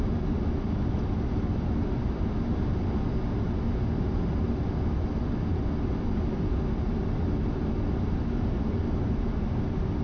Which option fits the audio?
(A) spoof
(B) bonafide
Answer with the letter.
B